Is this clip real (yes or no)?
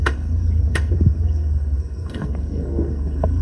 no